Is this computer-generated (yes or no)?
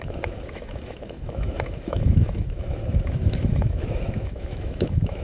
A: yes